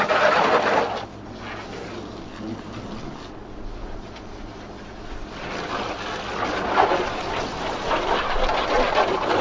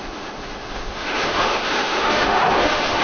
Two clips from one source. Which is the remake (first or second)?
second